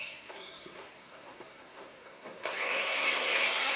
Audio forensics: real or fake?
fake